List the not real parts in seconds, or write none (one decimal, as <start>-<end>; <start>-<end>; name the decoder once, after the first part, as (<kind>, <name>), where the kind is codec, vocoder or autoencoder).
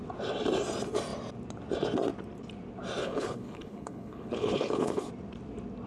3.0-5.1 (codec, HILCodec)